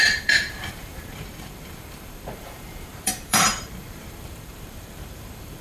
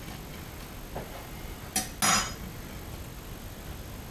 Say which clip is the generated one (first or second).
first